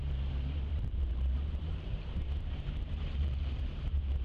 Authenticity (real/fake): fake